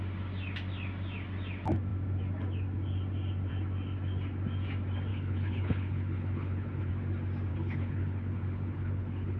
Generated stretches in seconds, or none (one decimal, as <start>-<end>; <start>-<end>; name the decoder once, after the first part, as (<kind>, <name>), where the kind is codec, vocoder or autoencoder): 5.1-6.9 (codec, HILCodec); 7.5-9.4